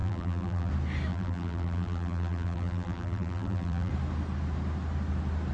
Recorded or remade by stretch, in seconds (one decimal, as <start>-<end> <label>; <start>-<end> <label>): 0.0-0.7 remade; 0.7-1.1 recorded; 1.1-3.9 remade; 3.9-5.5 recorded